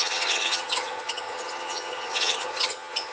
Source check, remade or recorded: remade